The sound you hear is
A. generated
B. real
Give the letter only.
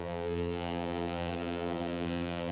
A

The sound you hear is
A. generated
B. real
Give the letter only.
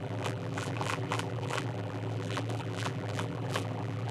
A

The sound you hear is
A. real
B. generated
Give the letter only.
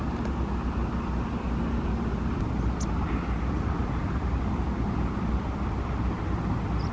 A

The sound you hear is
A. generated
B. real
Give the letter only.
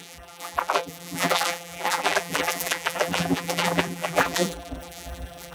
A